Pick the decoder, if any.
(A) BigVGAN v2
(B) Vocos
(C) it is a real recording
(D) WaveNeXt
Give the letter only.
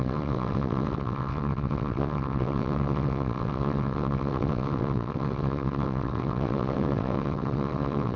D